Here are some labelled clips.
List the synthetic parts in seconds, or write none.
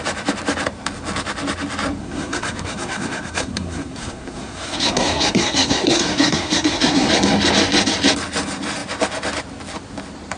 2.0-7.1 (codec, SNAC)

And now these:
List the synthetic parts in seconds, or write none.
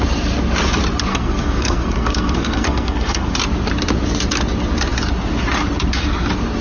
1.1-3.3 (codec, SNAC)